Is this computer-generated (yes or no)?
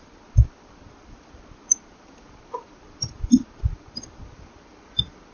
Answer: yes